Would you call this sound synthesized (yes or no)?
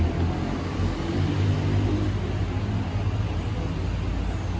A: no